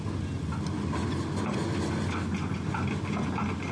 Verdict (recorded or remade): recorded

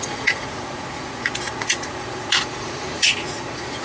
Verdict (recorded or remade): remade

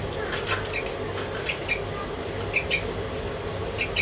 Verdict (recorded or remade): recorded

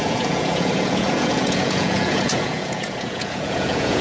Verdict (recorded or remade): remade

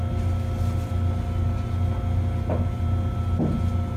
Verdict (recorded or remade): recorded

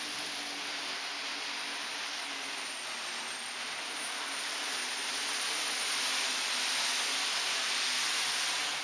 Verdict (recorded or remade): recorded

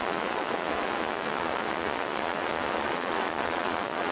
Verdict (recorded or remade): remade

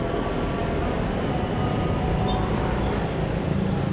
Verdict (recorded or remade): recorded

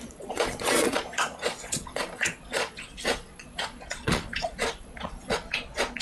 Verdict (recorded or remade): remade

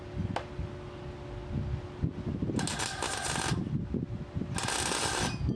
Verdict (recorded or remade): recorded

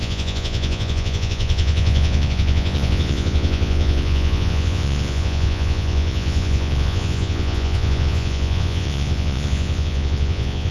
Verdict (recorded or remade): remade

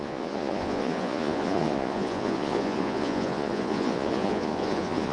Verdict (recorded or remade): remade